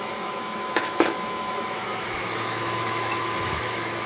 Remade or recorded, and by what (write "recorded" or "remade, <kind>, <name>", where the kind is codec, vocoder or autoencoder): remade, autoencoder, DAC-VAE